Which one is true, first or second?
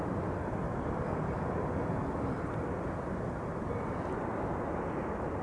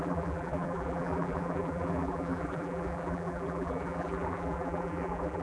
first